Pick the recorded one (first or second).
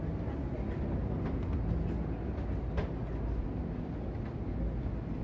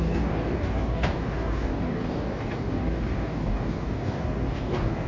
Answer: first